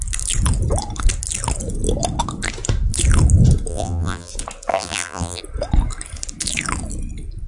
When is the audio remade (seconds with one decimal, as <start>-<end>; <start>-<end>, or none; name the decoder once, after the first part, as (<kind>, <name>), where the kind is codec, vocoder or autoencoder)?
3.7-4.3 (vocoder, BigVGAN v2); 4.7-5.4